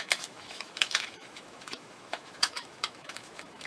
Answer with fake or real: fake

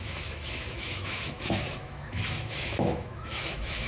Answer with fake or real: fake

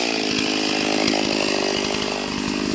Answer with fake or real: real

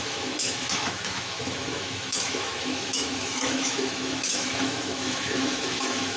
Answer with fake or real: fake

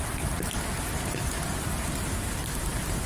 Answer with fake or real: real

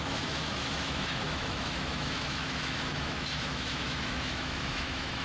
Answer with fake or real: fake